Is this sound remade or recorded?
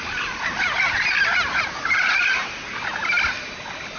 recorded